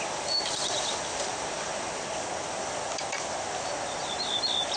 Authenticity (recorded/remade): recorded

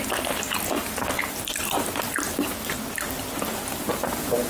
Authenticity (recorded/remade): recorded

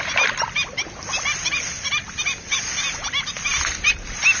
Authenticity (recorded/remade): recorded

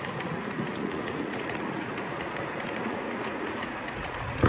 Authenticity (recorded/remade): remade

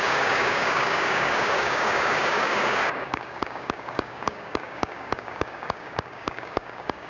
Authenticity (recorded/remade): remade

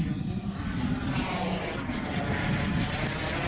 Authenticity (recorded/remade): recorded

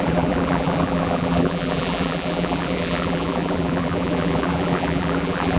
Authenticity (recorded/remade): remade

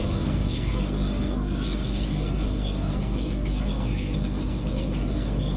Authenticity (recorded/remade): remade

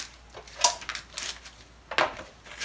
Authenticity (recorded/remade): recorded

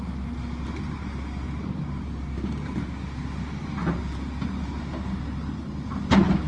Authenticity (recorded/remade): recorded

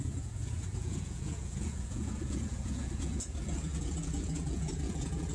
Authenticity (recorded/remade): remade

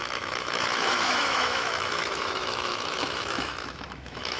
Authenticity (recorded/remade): remade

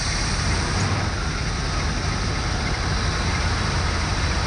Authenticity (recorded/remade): recorded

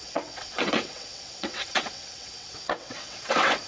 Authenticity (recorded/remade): remade